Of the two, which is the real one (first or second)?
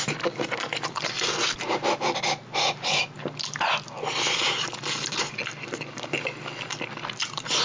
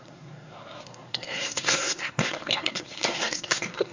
first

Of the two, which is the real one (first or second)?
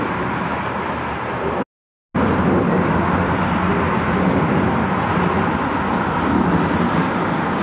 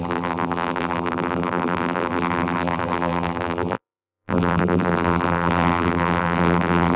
first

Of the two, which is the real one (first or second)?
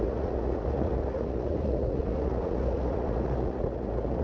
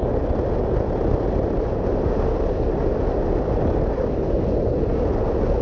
second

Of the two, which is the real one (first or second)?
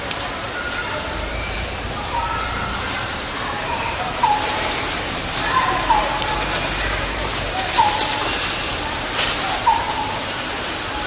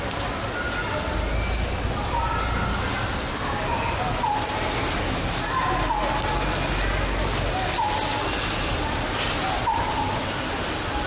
second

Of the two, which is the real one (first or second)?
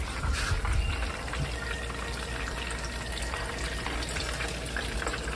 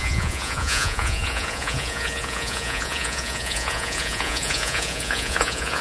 first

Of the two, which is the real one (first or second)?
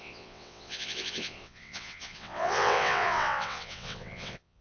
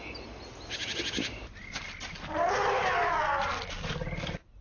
second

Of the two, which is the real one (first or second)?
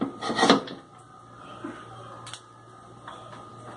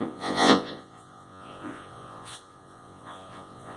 first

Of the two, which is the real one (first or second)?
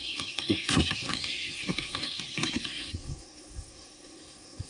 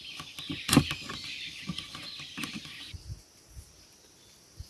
second